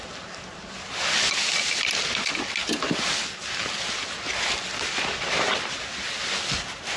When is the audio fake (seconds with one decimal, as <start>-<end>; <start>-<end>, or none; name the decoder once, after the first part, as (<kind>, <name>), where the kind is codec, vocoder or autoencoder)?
none